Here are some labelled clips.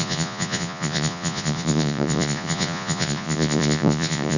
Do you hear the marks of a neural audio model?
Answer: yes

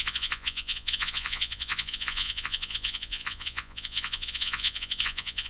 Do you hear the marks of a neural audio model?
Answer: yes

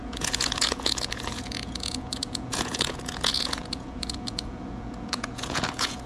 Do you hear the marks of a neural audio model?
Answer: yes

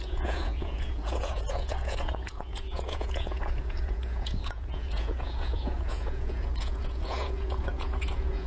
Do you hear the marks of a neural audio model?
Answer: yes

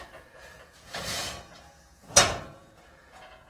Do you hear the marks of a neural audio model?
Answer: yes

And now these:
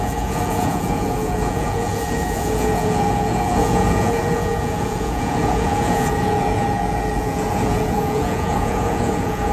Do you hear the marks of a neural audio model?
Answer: yes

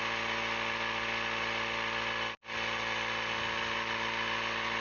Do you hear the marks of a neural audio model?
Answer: no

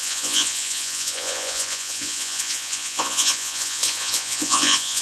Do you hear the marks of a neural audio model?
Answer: yes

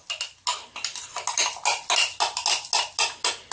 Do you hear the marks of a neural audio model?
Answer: no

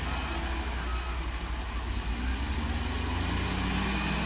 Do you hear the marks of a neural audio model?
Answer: no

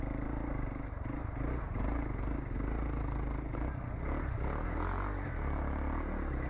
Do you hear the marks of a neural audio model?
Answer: no